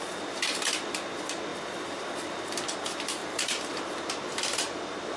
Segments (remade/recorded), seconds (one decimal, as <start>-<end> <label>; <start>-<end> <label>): 0.0-5.2 remade